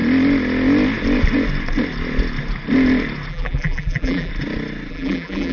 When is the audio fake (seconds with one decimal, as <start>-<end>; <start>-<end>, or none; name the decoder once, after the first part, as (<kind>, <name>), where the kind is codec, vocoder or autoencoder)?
3.3-4.3 (vocoder, BigVGAN v2); 4.9-5.5